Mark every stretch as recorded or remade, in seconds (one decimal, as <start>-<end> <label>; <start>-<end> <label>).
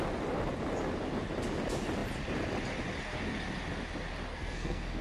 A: 0.0-4.3 recorded; 4.3-5.0 remade